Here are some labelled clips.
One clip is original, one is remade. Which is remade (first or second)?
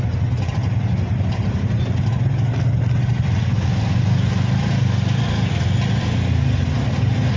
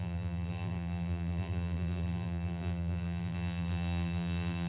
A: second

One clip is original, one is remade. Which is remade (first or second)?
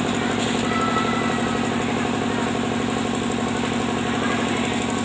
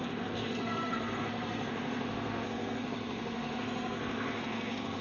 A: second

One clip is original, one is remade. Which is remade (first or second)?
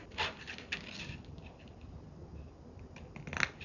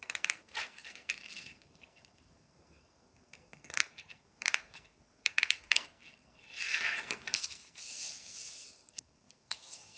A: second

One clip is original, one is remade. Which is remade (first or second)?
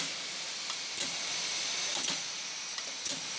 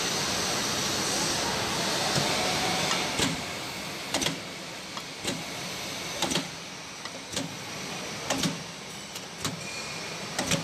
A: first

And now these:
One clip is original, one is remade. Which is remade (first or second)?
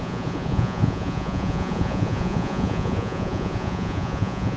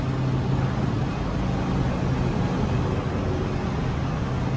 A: first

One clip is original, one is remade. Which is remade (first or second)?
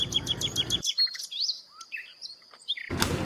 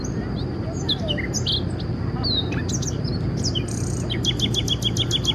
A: first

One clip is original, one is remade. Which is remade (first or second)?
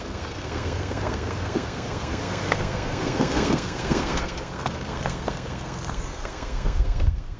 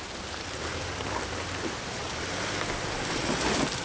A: first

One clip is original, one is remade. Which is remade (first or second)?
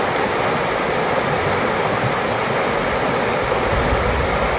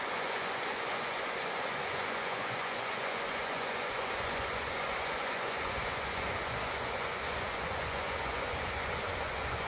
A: second